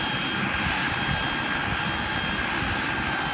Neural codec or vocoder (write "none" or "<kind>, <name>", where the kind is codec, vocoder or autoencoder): none